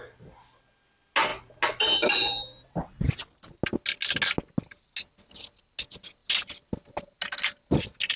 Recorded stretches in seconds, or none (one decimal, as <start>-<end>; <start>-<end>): 0.0-8.2